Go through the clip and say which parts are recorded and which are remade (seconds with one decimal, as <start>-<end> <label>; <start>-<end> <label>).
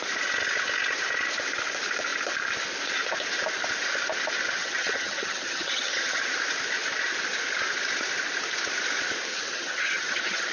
0.0-4.6 recorded; 4.6-6.2 remade; 6.2-9.3 recorded; 9.3-10.5 remade